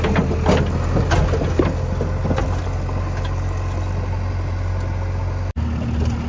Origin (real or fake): real